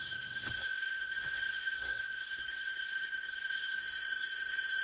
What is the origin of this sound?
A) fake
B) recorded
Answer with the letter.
A